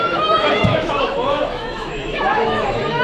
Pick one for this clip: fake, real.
fake